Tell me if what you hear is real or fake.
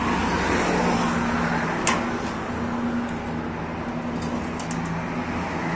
real